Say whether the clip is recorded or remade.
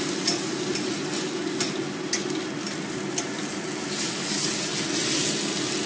recorded